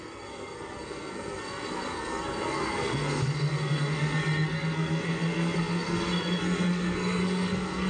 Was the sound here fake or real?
fake